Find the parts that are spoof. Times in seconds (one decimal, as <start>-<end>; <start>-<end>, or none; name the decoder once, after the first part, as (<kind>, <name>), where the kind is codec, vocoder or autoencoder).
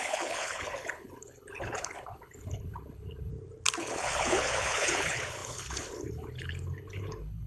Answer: 0.0-3.3 (codec, HILCodec); 3.8-7.5